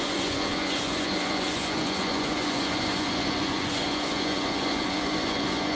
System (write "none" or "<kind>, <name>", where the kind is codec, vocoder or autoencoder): vocoder, Vocos